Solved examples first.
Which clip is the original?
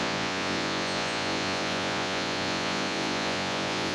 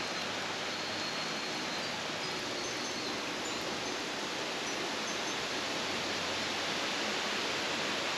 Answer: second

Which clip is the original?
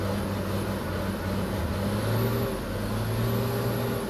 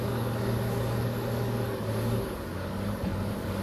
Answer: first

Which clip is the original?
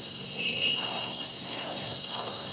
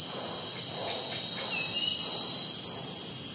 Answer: second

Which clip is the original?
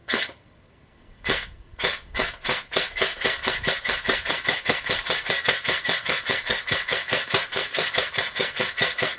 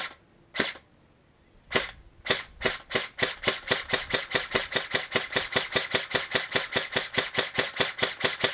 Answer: second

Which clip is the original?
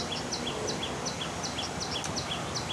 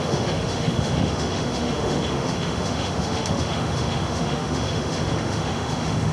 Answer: first